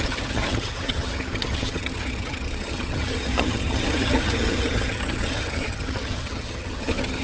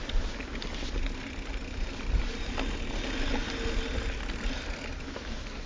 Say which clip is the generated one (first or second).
first